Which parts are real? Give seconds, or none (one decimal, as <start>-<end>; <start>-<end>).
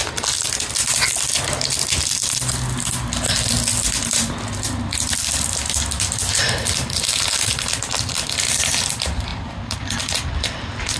0.0-11.0